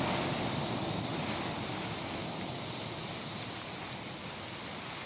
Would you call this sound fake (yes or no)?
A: no